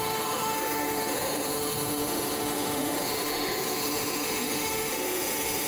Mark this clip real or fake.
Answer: fake